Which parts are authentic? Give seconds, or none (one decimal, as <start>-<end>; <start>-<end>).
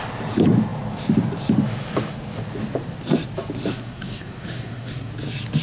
0.0-3.7; 5.1-5.6